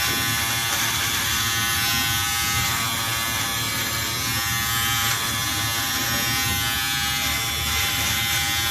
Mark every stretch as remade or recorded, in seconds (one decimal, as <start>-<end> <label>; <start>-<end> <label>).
0.0-8.7 recorded